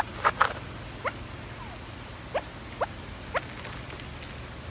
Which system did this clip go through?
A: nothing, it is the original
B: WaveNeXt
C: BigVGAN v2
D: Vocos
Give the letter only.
A